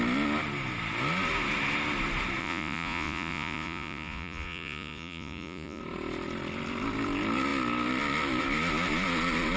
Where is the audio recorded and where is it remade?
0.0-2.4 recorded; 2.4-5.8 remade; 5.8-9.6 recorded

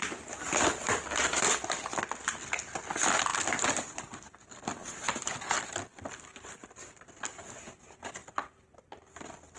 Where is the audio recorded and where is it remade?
0.0-3.3 recorded; 3.3-8.1 remade; 8.1-9.6 recorded

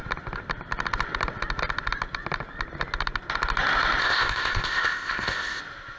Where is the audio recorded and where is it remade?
0.0-4.0 recorded; 4.0-5.6 remade; 5.6-6.0 recorded